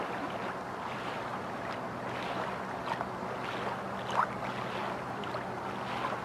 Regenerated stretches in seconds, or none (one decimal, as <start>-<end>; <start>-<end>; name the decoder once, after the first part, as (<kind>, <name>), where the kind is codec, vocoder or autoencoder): none